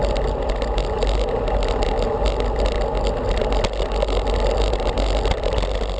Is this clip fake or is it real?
real